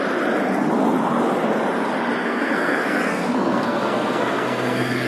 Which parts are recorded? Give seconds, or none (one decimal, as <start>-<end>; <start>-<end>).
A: 0.0-2.2